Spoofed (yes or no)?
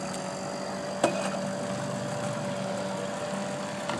no